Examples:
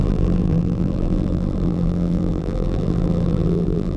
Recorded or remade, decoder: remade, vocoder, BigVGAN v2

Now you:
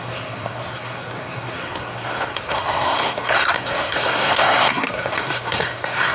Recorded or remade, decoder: remade, codec, SNAC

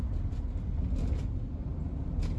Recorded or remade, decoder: recorded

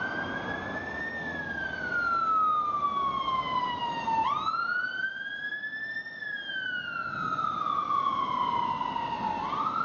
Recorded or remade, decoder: recorded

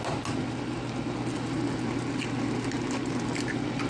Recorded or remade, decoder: recorded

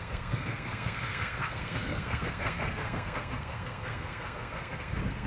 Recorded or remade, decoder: remade, codec, SNAC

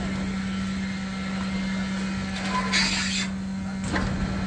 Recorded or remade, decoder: recorded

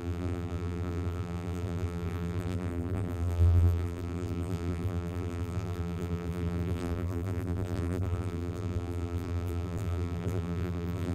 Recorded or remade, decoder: remade, vocoder, BigVGAN v2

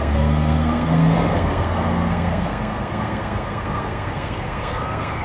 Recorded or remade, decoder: remade, codec, SNAC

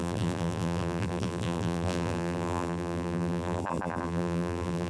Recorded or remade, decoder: remade, vocoder, BigVGAN v2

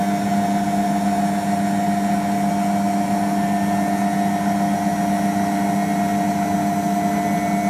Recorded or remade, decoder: recorded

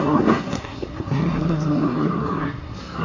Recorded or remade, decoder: remade, codec, SNAC